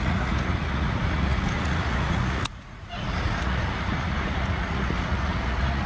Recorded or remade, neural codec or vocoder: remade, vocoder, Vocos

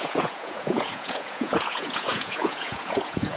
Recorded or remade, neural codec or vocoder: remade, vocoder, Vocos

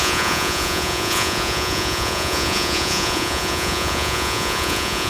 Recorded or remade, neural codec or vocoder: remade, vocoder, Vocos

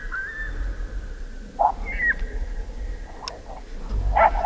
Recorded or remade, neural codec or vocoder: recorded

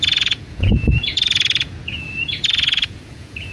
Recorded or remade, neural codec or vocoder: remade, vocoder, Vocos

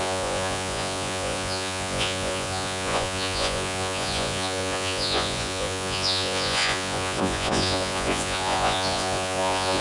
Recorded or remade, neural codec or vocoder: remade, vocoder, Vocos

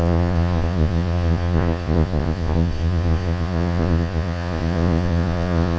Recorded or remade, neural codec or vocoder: remade, vocoder, Vocos